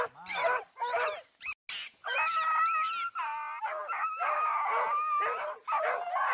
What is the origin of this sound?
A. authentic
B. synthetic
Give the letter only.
A